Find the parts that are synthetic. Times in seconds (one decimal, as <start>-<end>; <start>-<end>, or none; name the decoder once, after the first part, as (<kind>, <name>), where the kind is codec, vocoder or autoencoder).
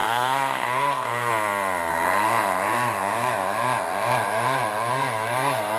0.0-1.3 (codec, SNAC); 1.9-5.8